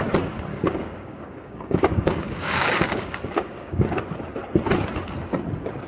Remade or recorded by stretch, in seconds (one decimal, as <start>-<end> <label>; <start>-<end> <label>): 0.0-0.5 recorded; 0.5-4.0 remade; 4.0-5.9 recorded

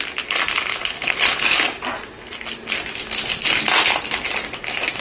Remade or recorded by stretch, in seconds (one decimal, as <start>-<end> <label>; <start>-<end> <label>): 0.0-0.7 recorded; 0.7-1.6 remade; 1.6-5.0 recorded

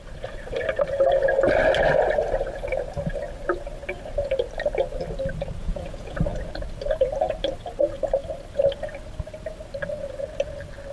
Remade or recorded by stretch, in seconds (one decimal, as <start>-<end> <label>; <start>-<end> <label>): 0.0-5.6 recorded; 5.6-6.2 remade; 6.2-10.9 recorded